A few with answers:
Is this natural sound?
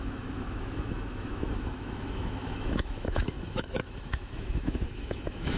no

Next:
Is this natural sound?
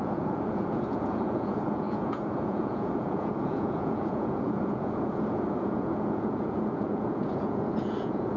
no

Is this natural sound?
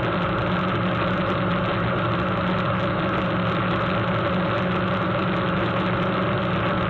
yes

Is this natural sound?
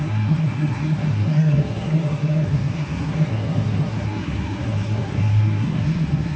no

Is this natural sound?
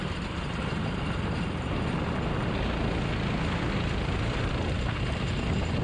yes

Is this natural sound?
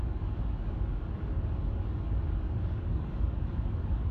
no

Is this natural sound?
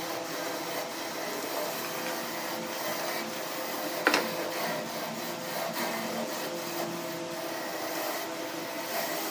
yes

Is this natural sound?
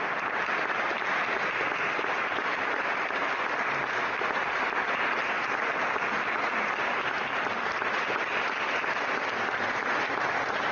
yes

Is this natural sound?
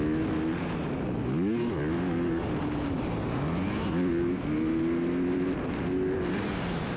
yes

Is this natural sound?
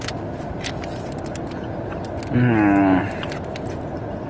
yes